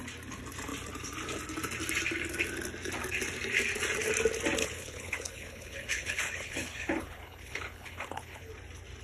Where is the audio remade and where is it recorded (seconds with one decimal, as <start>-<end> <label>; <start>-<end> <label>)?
0.0-4.6 recorded; 4.6-8.5 remade; 8.5-9.0 recorded